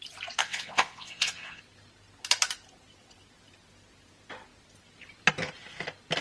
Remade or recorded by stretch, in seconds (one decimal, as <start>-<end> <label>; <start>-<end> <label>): 0.0-0.4 recorded; 0.4-1.6 remade; 1.6-6.2 recorded